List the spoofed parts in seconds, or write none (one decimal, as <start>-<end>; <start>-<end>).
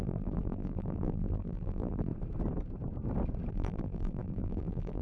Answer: 0.0-2.1; 3.5-5.0